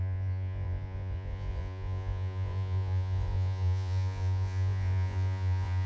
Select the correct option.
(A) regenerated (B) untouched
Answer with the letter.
A